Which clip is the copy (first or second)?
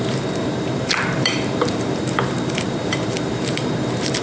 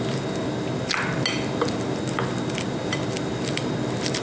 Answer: first